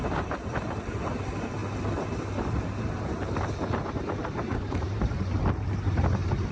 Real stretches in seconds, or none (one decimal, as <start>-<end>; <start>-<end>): 1.6-2.8